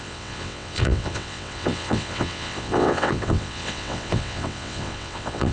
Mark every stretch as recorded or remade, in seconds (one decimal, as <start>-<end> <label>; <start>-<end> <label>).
0.0-5.5 remade